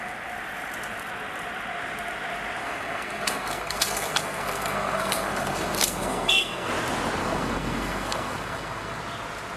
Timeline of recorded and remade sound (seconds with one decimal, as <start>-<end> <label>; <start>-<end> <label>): 0.0-2.6 recorded; 2.6-6.7 remade; 6.7-7.2 recorded; 7.2-9.0 remade; 9.0-9.6 recorded